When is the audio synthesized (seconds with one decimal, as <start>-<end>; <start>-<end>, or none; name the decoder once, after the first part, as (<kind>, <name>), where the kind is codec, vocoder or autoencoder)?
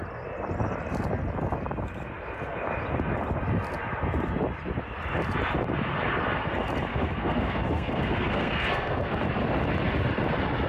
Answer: 6.9-9.2 (codec, SNAC)